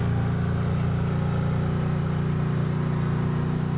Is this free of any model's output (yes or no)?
yes